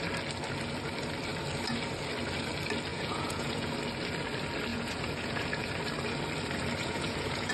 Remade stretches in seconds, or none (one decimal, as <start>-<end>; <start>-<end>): 2.9-3.7; 4.7-5.7; 6.8-7.5